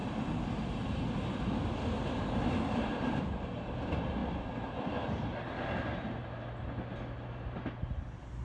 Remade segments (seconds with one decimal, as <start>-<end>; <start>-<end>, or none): none